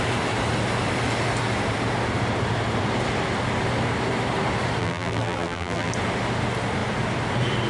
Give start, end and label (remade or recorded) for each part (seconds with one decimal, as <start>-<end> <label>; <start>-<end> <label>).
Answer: 0.0-4.8 recorded; 4.8-5.9 remade; 5.9-7.7 recorded